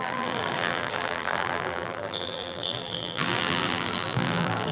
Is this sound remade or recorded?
remade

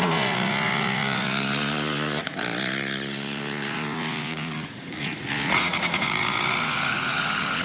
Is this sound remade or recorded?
remade